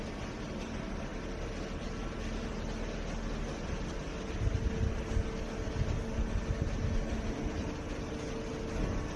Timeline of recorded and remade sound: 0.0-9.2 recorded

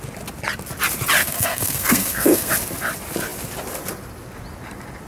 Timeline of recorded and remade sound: 0.0-1.2 recorded; 1.2-2.5 remade; 2.5-5.1 recorded

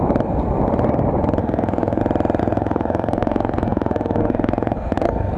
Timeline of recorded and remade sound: 0.0-1.4 recorded; 1.4-2.0 remade; 2.0-2.4 recorded; 2.4-5.4 remade

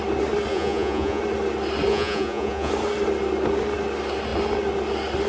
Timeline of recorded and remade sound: 0.0-0.5 recorded; 0.5-1.2 remade; 1.2-1.9 recorded; 1.9-2.7 remade; 2.7-5.3 recorded

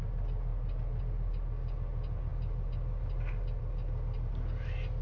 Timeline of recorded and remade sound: 0.0-5.0 recorded

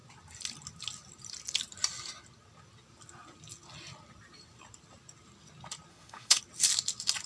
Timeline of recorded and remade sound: 0.0-5.9 recorded; 5.9-6.4 remade; 6.4-7.3 recorded

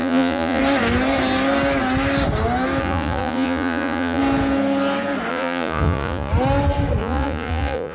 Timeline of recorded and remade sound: 0.0-0.6 remade; 0.6-2.8 recorded; 2.8-4.2 remade; 4.2-5.3 recorded; 5.3-6.3 remade; 6.3-7.0 recorded; 7.0-7.9 remade